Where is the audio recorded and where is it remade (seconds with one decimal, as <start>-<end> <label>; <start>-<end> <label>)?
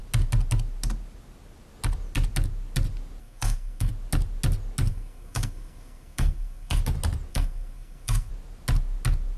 0.0-3.2 recorded; 3.2-3.9 remade; 3.9-4.9 recorded; 4.9-6.8 remade; 6.8-7.3 recorded; 7.3-8.3 remade; 8.3-9.4 recorded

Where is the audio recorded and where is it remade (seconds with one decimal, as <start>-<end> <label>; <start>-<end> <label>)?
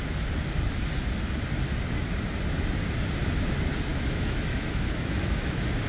0.0-3.9 recorded; 3.9-5.9 remade